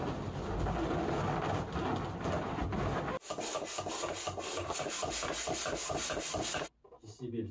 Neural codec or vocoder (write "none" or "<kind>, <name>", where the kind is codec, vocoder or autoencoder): none